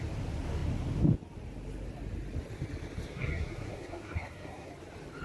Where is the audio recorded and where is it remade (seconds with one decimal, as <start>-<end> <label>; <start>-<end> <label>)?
0.0-3.1 recorded; 3.1-4.7 remade; 4.7-5.2 recorded